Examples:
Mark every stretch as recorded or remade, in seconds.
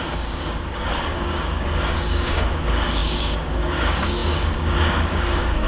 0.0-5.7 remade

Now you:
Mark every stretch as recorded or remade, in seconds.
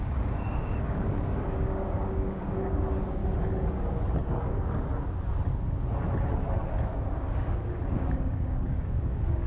0.0-3.2 remade; 3.2-4.2 recorded; 4.2-4.9 remade; 4.9-6.8 recorded; 6.8-9.5 remade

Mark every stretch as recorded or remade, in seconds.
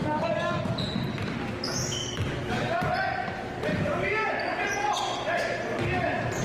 0.0-0.8 remade; 0.8-2.0 recorded; 2.0-2.9 remade; 2.9-3.7 recorded; 3.7-4.3 remade; 4.3-6.4 recorded